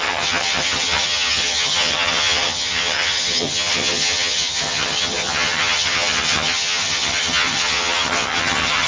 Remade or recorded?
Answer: remade